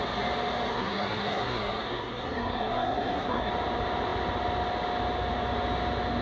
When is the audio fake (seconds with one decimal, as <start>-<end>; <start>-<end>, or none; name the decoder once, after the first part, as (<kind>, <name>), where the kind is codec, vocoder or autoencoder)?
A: 0.7-3.5 (codec, SNAC)